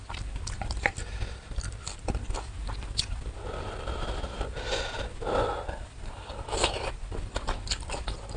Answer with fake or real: fake